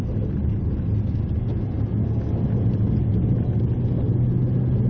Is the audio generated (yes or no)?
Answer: no